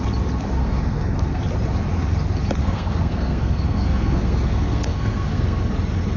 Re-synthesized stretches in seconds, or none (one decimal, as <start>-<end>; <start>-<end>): 0.6-1.4; 2.6-5.6